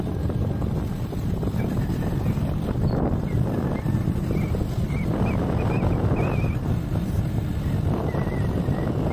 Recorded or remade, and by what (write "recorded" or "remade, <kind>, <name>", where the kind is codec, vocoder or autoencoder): recorded